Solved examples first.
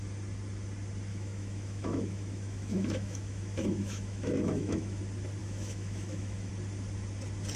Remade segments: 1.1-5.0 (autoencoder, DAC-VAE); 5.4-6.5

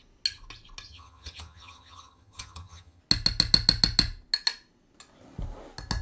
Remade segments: 0.9-3.0 (vocoder, HiFi-GAN)

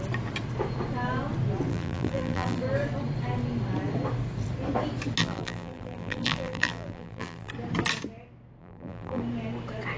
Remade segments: 1.7-2.6 (vocoder, BigVGAN v2); 5.2-7.5; 8.6-9.2